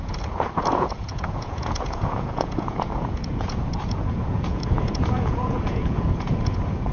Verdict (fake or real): fake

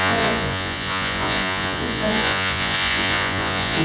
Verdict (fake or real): fake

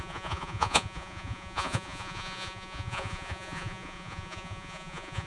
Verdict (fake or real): fake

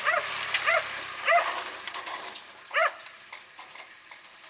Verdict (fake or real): real